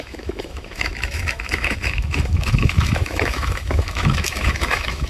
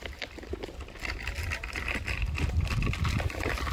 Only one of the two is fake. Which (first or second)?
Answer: first